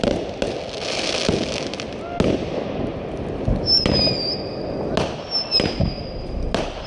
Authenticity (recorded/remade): recorded